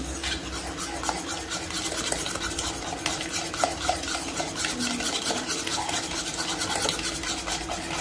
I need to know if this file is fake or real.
real